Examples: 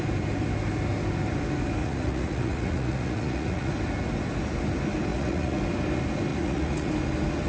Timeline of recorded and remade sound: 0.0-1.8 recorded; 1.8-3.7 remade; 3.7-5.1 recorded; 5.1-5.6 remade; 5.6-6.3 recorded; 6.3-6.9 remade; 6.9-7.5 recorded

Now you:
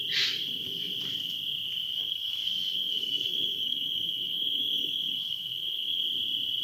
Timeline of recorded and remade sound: 0.0-2.0 recorded; 2.0-6.0 remade; 6.0-6.6 recorded

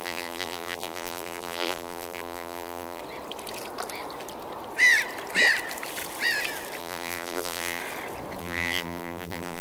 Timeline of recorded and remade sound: 0.0-3.0 remade; 3.0-6.8 recorded; 6.8-7.8 remade; 7.8-8.4 recorded; 8.4-9.6 remade

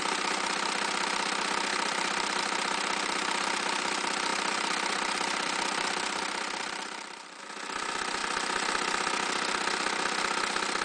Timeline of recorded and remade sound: 0.0-1.7 recorded; 1.7-2.4 remade; 2.4-4.3 recorded; 4.3-7.4 remade; 7.4-10.8 recorded

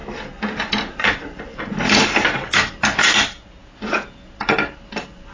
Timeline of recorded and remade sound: 0.0-3.6 recorded; 3.6-4.3 remade; 4.3-5.3 recorded

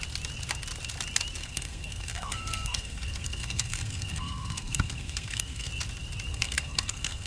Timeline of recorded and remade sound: 0.0-1.4 recorded; 1.4-5.7 remade; 5.7-6.3 recorded; 6.3-7.3 remade

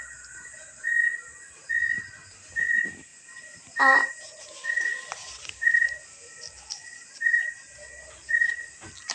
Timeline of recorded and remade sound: 0.0-3.1 recorded; 3.1-7.4 remade; 7.4-9.1 recorded

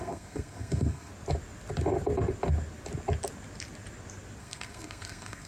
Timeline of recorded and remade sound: 0.0-1.1 remade; 1.1-4.4 recorded; 4.4-5.5 remade